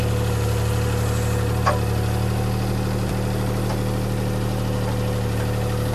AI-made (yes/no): no